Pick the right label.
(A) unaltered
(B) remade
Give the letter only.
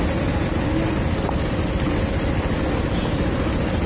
A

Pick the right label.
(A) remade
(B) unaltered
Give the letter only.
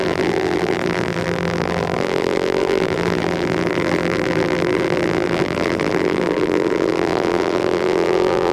A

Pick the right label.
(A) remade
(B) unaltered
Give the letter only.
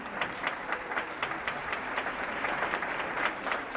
A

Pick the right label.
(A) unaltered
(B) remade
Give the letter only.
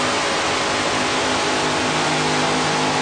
A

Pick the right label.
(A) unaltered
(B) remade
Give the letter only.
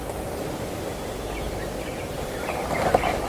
B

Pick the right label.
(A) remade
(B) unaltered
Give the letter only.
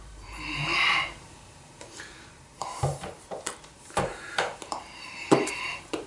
A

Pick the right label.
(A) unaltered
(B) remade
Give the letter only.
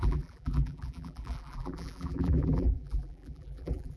B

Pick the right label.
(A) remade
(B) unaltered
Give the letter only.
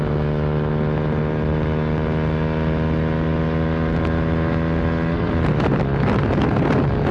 B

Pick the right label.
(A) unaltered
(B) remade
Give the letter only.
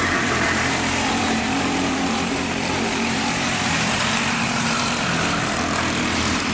B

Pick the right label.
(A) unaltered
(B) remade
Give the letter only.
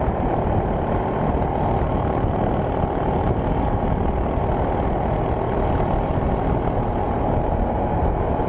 A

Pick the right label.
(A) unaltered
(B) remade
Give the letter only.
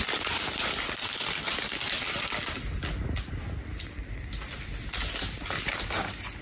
A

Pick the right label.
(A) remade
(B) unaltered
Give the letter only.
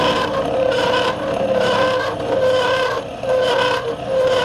B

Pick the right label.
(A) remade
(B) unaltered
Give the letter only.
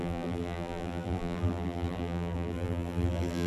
A